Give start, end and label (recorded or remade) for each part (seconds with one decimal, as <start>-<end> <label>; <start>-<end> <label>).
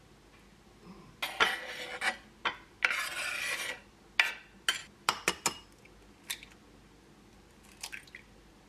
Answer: 0.0-8.7 recorded